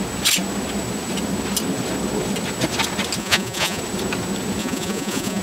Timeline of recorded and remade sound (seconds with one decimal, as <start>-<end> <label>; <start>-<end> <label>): 0.0-3.2 recorded; 3.2-3.8 remade; 3.8-4.6 recorded; 4.6-5.4 remade